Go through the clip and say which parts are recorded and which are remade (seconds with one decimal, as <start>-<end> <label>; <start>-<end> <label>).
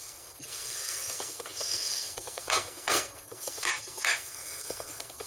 0.0-5.3 remade